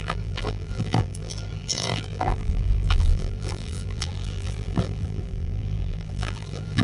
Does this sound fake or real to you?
fake